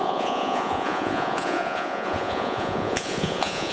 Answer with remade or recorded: remade